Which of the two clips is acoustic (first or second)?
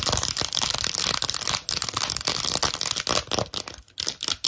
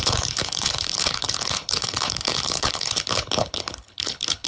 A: first